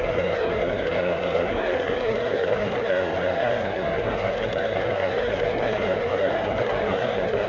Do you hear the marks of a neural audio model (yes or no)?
yes